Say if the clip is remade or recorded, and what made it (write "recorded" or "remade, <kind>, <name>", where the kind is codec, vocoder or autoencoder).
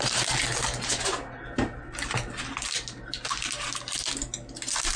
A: recorded